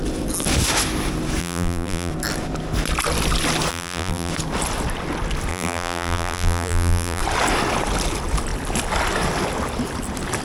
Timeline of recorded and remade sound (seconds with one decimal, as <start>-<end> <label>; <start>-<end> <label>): 0.0-1.4 recorded; 1.4-2.1 remade; 2.1-3.7 recorded; 3.7-4.3 remade; 4.3-5.5 recorded; 5.5-7.2 remade; 7.2-10.4 recorded